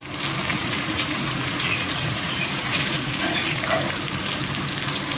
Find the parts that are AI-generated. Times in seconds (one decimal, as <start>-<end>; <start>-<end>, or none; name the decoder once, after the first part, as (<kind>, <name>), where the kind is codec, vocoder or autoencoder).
0.5-3.6 (vocoder, Vocos)